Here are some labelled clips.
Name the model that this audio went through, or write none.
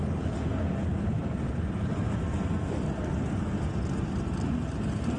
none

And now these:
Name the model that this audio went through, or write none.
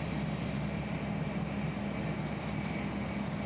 none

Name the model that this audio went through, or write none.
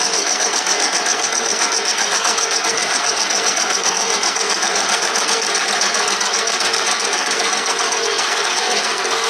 codec, SNAC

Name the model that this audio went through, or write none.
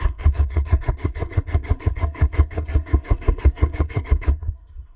codec, SNAC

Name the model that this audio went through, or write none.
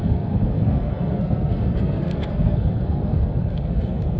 codec, SNAC